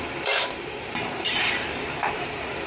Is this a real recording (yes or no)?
no